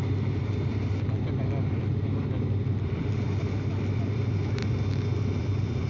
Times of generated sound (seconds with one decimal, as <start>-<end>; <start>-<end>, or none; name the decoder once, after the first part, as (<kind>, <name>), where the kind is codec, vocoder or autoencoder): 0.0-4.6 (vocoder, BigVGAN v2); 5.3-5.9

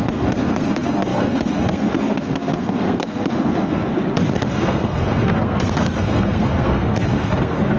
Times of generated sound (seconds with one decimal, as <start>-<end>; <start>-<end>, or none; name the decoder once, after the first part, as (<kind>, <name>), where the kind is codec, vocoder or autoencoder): 0.0-3.9 (codec, SNAC); 4.5-7.8

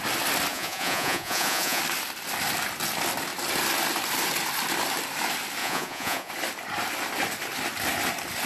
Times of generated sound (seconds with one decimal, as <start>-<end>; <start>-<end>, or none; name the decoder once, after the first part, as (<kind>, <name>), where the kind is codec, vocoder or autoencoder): 0.5-1.8 (vocoder, Vocos); 5.6-6.3

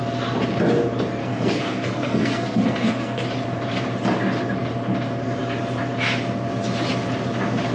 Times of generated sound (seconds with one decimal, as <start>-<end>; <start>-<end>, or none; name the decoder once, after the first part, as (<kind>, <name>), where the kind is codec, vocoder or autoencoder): 1.2-3.2 (codec, SNAC)